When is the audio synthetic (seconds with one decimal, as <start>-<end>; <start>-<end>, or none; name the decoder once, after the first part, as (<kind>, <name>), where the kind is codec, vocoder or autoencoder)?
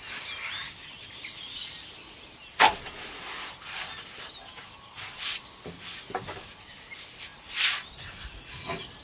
none